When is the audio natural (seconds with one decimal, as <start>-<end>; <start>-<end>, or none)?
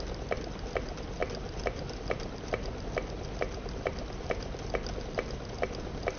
0.0-6.2